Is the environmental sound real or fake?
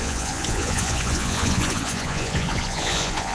fake